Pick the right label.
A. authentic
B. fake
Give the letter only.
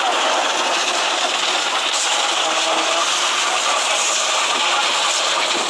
A